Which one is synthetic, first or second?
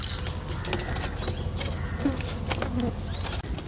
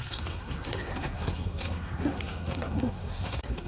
second